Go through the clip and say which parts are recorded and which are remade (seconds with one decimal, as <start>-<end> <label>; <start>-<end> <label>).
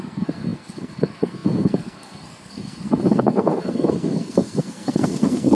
0.0-5.5 remade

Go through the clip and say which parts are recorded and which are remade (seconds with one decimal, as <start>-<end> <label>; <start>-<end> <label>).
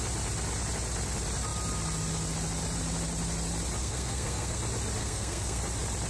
0.0-3.8 recorded; 3.8-4.6 remade; 4.6-5.0 recorded; 5.0-5.6 remade; 5.6-6.1 recorded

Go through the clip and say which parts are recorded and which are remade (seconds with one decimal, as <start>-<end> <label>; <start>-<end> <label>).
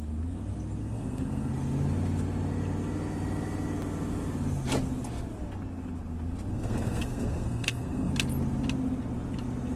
0.0-0.8 recorded; 0.8-1.5 remade; 1.5-6.5 recorded; 6.5-8.1 remade; 8.1-9.8 recorded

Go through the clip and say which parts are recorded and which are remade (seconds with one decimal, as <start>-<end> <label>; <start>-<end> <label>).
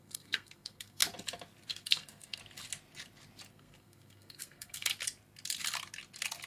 0.0-1.0 remade; 1.0-1.7 recorded; 1.7-2.4 remade; 2.4-3.5 recorded; 3.5-4.9 remade; 4.9-6.5 recorded